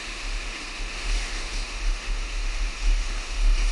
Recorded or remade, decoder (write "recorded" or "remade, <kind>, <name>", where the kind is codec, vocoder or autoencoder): remade, autoencoder, DAC-VAE